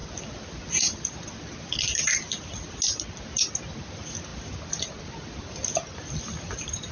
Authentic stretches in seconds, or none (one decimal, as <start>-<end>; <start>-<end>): 0.0-6.9